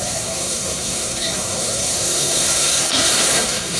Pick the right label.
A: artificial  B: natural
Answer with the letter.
A